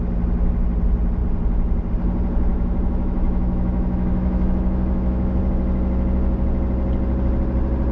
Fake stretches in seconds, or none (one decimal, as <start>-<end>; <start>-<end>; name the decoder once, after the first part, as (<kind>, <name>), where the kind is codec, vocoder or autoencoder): 2.5-5.4 (autoencoder, DAC-VAE)